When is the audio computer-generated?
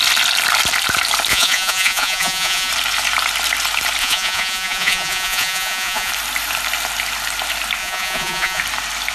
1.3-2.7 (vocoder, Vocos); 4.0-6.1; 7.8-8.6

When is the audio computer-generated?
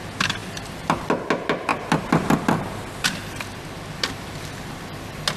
none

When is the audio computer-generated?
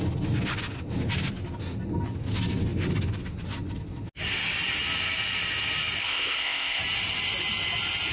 6.0-6.8 (codec, ZipCodec)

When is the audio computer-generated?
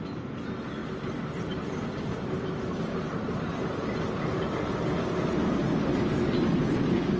none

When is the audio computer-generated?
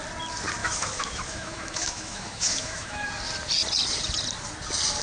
0.6-3.1 (autoencoder, DAC-VAE)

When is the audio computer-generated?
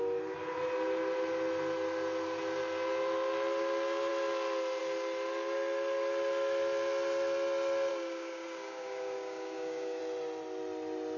7.9-10.0 (codec, DAC)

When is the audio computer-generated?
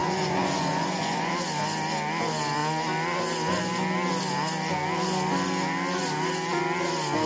0.0-1.3 (vocoder, Vocos)